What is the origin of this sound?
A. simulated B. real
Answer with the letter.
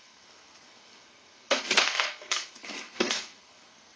A